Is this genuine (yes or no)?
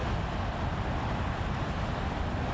yes